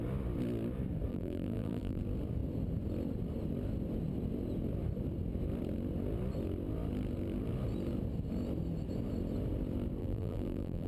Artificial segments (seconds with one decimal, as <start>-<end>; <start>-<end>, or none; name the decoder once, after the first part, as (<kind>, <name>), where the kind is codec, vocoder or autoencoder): 1.1-2.0 (vocoder, BigVGAN v2); 10.0-10.9

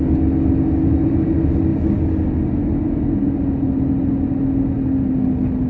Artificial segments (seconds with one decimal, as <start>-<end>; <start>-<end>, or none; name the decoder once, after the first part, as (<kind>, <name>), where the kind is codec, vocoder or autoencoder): none

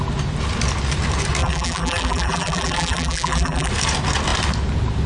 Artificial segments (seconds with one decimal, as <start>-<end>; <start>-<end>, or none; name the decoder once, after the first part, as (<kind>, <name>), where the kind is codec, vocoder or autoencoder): 1.4-3.7 (vocoder, BigVGAN v2)

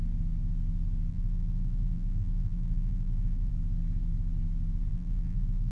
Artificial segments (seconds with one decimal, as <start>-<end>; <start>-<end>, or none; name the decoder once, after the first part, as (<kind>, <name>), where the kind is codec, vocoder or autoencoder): 1.1-3.5 (vocoder, BigVGAN v2); 4.9-5.7